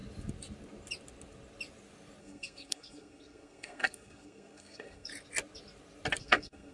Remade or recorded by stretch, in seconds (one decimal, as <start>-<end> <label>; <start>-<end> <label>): 0.0-2.2 recorded; 2.2-5.1 remade; 5.1-6.2 recorded; 6.2-6.7 remade